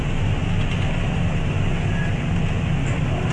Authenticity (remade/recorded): recorded